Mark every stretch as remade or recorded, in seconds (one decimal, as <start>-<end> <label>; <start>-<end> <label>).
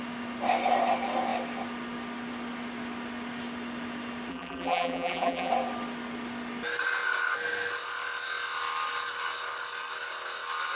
0.0-4.3 recorded; 4.3-5.5 remade; 5.5-10.7 recorded